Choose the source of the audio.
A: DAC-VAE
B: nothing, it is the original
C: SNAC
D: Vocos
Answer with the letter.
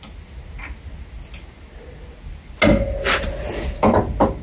B